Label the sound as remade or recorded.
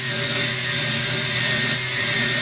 recorded